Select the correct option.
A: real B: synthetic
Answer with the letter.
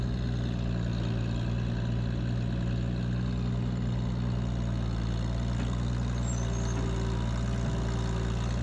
A